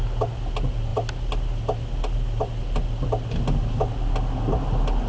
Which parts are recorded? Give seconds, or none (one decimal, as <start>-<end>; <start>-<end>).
0.0-5.1